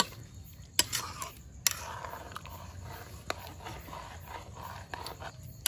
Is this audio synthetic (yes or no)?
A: no